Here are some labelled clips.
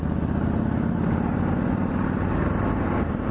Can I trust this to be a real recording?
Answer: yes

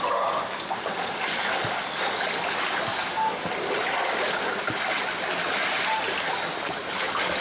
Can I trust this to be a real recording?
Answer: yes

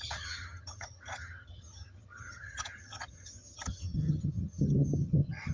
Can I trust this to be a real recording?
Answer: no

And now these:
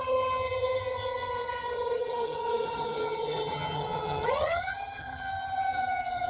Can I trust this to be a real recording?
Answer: no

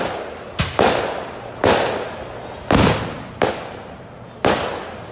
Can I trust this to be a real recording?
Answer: yes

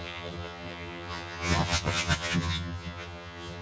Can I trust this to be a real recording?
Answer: no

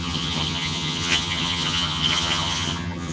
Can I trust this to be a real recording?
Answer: no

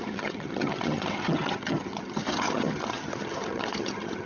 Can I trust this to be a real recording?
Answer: no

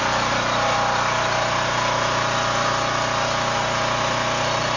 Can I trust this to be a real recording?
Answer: yes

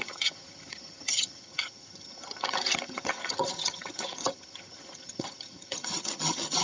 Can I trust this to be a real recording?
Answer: no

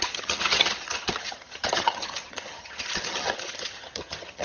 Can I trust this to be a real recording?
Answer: no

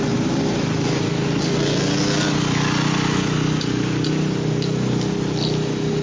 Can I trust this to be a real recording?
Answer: yes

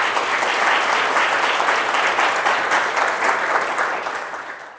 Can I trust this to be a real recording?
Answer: yes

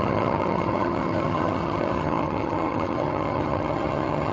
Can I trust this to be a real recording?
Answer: no